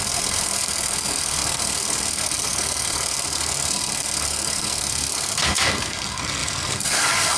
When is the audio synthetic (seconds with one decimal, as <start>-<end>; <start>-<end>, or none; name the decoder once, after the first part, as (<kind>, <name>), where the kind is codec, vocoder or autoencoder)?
0.0-7.4 (codec, SNAC)